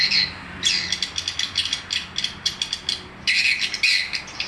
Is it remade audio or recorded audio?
recorded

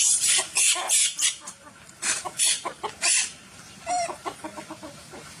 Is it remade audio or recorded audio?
remade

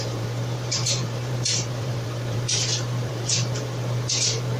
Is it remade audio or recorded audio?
remade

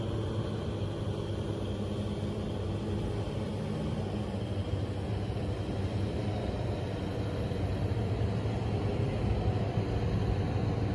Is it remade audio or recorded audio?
recorded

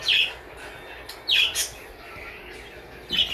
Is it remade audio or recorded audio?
recorded